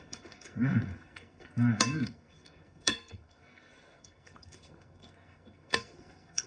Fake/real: fake